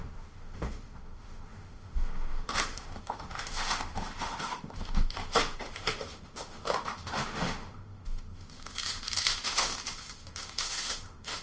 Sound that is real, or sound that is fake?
fake